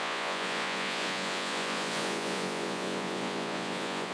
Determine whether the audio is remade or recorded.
remade